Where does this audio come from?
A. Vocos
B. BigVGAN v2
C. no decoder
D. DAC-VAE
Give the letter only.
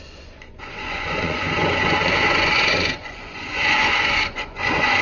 A